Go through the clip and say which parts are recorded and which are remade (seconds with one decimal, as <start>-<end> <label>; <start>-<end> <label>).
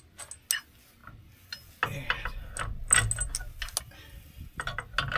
0.0-5.2 recorded